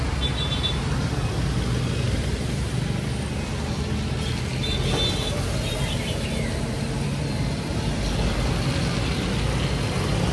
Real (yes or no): yes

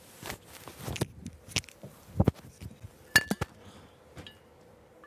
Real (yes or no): yes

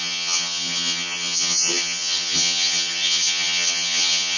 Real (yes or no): no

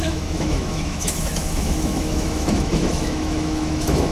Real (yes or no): no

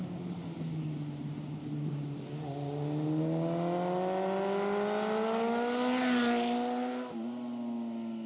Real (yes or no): yes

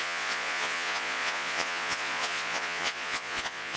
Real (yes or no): no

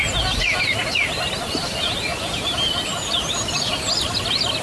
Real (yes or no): yes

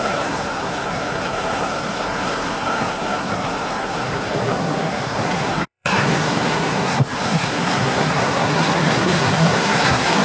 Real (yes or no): no